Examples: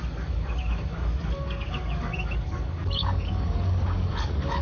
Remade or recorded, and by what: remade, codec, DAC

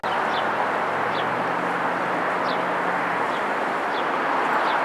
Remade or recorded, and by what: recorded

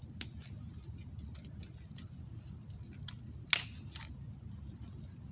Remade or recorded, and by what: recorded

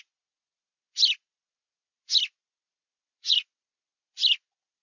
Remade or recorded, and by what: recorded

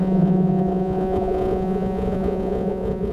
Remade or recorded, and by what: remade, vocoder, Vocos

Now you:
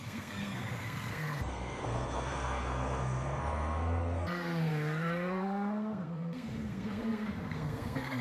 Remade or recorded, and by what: remade, codec, SNAC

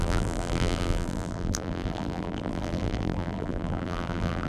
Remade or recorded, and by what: remade, vocoder, BigVGAN v2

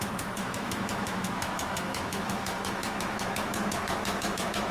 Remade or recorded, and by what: remade, autoencoder, DAC-VAE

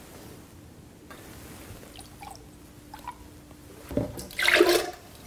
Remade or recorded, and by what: recorded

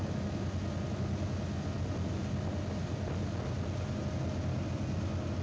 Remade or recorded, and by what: recorded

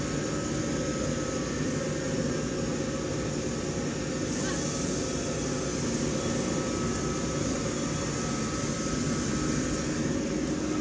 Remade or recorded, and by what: recorded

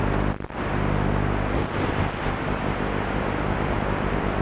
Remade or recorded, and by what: recorded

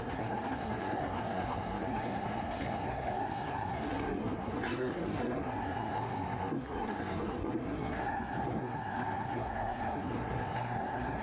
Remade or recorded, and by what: remade, codec, SNAC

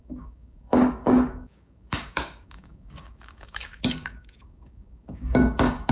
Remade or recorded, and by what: remade, codec, DAC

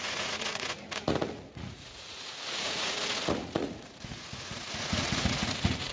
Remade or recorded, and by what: remade, vocoder, Vocos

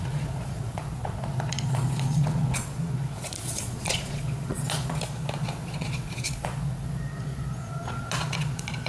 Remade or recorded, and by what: remade, vocoder, Vocos